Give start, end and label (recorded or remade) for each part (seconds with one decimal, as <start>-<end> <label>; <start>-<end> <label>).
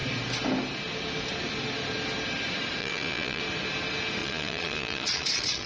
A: 0.0-2.8 recorded; 2.8-3.4 remade; 3.4-4.2 recorded; 4.2-5.7 remade